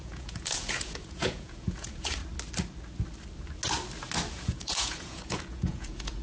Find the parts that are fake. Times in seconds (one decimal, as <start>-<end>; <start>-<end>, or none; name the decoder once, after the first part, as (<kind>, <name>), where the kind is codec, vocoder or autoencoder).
0.0-2.2 (vocoder, Vocos); 4.3-6.2